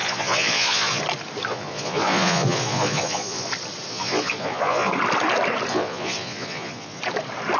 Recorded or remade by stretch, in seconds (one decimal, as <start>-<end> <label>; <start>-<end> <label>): 0.0-1.0 remade; 1.0-1.5 recorded; 1.5-3.5 remade; 3.5-3.9 recorded; 3.9-4.9 remade; 4.9-5.7 recorded; 5.7-7.0 remade; 7.0-7.6 recorded

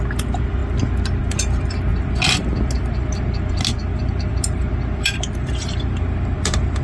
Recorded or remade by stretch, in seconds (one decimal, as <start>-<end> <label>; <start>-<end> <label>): 0.0-1.9 recorded; 1.9-2.7 remade; 2.7-3.8 recorded; 3.8-6.8 remade